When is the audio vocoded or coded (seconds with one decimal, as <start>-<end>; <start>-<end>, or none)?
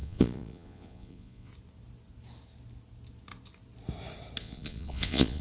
0.0-1.5; 4.4-5.4